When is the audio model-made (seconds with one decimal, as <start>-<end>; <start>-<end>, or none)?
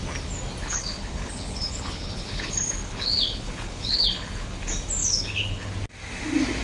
0.6-4.6; 5.0-5.7